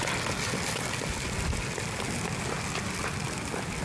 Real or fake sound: real